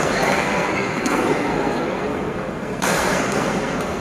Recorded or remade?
remade